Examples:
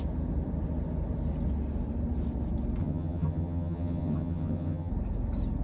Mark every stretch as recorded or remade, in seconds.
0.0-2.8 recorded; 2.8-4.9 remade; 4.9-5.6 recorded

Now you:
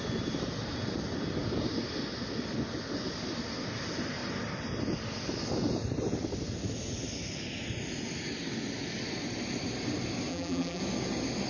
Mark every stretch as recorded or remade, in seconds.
0.0-10.3 recorded; 10.3-10.8 remade; 10.8-11.5 recorded